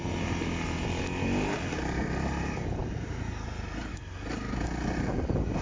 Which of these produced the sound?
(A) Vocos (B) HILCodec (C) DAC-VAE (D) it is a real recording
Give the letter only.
D